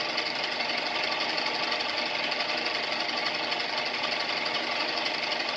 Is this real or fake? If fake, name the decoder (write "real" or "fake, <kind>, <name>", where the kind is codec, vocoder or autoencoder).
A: real